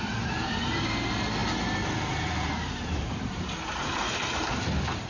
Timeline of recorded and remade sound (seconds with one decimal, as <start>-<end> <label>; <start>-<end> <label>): 0.0-5.1 remade